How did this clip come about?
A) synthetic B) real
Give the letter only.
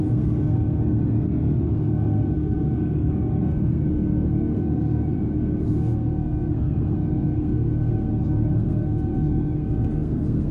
A